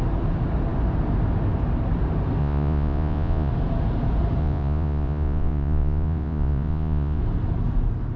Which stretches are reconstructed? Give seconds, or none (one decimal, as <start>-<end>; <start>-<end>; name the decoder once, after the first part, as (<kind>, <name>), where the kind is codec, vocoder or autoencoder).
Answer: 2.4-3.5 (vocoder, Vocos); 4.4-7.2